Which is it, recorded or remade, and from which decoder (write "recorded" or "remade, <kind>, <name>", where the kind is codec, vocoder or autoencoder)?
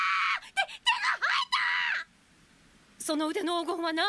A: recorded